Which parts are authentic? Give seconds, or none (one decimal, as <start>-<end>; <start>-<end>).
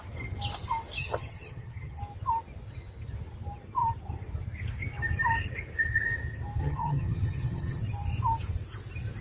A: 0.0-1.0; 2.0-6.6; 7.8-9.2